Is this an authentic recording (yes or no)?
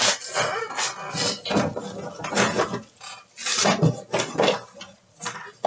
yes